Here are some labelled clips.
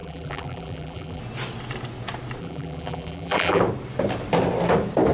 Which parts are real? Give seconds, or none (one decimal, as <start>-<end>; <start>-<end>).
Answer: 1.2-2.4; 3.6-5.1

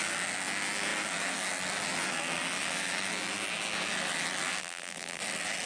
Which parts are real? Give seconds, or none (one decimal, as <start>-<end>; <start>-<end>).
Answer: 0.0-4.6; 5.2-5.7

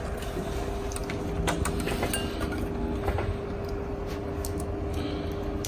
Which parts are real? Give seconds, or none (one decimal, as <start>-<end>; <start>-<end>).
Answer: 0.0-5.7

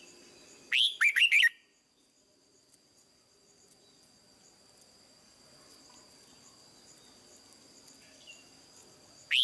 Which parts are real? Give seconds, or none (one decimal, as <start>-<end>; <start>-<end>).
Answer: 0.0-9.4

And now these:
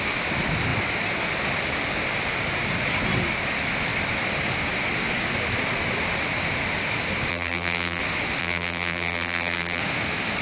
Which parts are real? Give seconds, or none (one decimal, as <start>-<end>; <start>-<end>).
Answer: 0.0-7.3; 8.0-8.4; 9.8-10.4